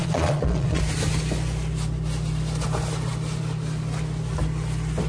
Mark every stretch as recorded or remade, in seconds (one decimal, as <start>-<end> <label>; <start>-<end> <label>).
0.0-0.8 remade; 0.8-5.1 recorded